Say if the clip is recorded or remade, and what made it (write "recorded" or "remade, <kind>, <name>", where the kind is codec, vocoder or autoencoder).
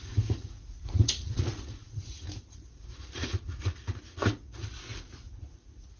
remade, vocoder, Vocos